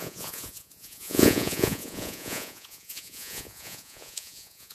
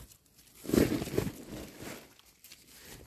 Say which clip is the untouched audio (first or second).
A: second